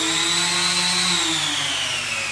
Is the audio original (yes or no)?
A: yes